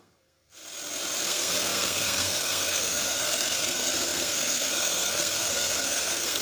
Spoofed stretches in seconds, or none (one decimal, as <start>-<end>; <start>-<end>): 0.0-0.6; 1.2-6.4